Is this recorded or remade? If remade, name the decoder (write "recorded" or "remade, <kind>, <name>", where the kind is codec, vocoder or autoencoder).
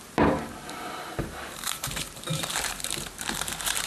remade, vocoder, BigVGAN v2